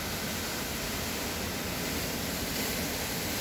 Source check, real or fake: real